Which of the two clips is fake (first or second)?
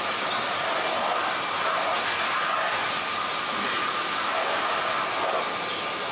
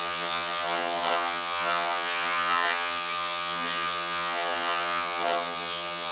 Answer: second